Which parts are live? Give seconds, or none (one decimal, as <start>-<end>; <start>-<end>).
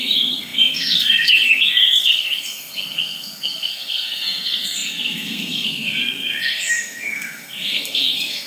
none